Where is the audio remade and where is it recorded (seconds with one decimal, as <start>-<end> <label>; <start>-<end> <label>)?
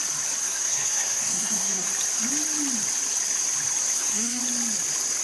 0.0-0.4 recorded; 0.4-1.9 remade; 1.9-3.9 recorded; 3.9-4.4 remade; 4.4-5.2 recorded